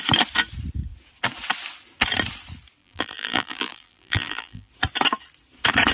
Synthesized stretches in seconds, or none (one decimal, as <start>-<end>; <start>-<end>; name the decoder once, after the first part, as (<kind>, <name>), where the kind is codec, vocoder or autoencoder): 2.8-4.7 (vocoder, BigVGAN v2)